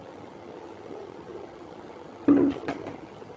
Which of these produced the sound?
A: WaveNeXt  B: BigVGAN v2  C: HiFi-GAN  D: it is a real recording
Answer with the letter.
C